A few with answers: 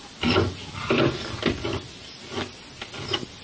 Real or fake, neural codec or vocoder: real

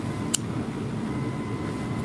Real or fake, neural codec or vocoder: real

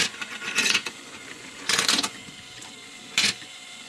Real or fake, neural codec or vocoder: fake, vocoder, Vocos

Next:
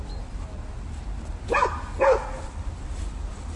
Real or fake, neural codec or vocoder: real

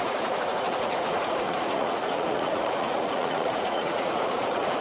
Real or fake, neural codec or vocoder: fake, vocoder, Vocos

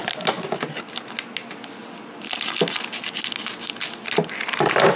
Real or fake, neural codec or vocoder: real